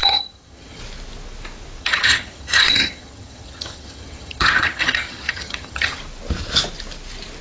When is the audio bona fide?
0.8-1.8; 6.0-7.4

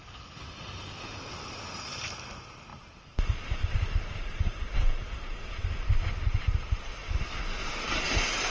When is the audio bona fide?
0.0-2.7; 5.3-7.6

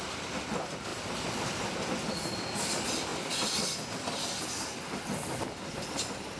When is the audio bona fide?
0.0-6.4

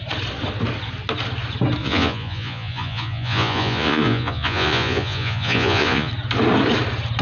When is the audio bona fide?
0.0-1.8; 6.1-7.2